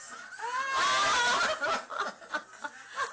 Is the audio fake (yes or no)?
no